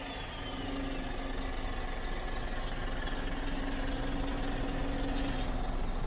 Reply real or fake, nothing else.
real